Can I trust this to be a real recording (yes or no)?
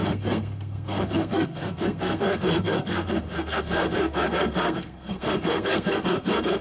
no